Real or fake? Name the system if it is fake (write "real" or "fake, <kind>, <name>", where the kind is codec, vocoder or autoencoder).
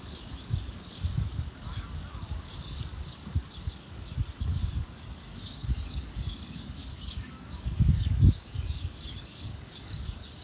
fake, codec, DAC